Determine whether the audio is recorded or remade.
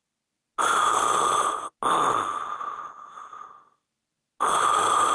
recorded